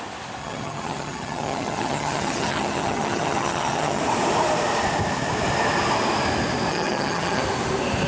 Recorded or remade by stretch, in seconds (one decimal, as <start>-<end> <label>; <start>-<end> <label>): 0.0-0.4 recorded; 0.4-4.0 remade; 4.0-6.7 recorded; 6.7-7.4 remade; 7.4-8.1 recorded